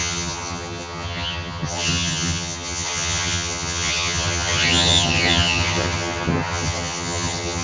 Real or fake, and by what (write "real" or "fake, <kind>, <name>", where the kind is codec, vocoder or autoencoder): fake, vocoder, HiFi-GAN